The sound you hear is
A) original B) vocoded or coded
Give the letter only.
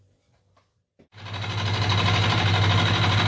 A